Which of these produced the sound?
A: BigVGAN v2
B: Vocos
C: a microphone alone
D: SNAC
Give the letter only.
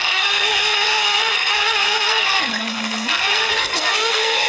D